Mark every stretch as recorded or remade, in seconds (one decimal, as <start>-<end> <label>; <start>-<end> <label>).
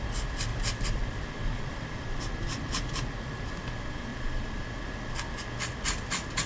0.0-0.5 recorded; 0.5-2.0 remade; 2.0-4.1 recorded; 4.1-4.7 remade; 4.7-6.5 recorded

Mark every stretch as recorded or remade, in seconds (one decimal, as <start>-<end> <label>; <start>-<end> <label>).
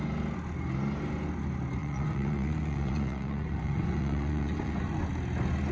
0.0-1.8 recorded; 1.8-5.1 remade; 5.1-5.7 recorded